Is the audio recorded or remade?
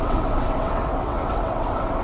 remade